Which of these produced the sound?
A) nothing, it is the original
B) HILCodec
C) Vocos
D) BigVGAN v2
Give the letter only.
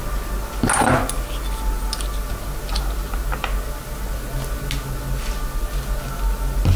A